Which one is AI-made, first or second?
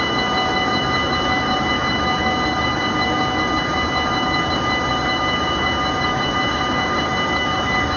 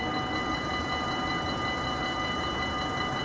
first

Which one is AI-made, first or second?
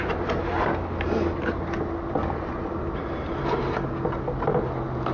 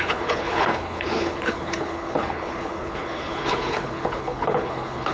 second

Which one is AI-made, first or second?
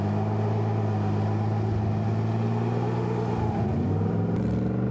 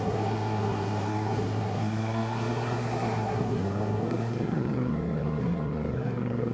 second